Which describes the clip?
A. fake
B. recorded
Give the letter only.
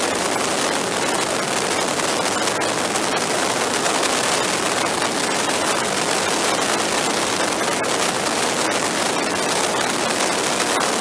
B